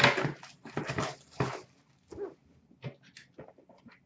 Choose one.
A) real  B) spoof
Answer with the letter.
A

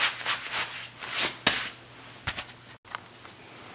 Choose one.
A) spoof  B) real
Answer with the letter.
B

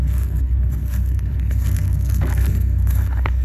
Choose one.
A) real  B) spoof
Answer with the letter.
B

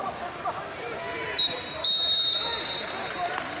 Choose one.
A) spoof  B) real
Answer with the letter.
B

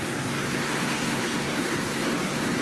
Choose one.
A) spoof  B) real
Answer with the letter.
A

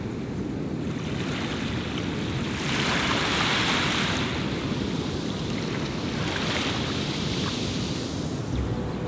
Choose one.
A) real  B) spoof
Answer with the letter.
A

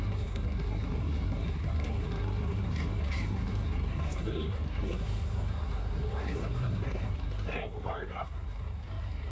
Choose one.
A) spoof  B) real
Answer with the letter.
A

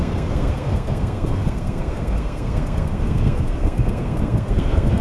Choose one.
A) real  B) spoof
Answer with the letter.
B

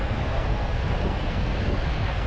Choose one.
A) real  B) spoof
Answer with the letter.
B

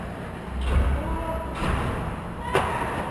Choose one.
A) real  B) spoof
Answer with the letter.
A